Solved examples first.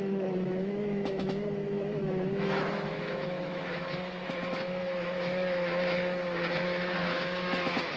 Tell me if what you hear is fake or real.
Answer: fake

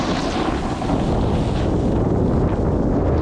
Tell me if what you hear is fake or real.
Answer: real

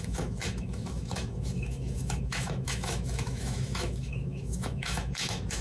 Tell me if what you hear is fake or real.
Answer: fake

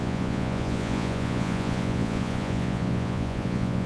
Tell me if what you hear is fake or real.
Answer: fake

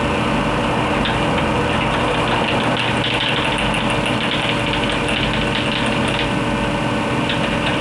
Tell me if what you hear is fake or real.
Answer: real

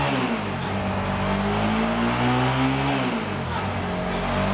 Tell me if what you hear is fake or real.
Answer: real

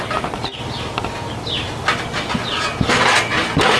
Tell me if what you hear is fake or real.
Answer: real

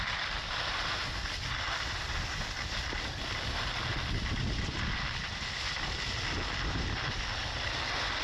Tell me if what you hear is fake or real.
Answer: real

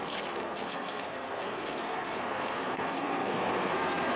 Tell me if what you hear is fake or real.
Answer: fake